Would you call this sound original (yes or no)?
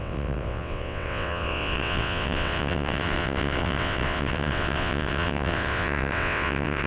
no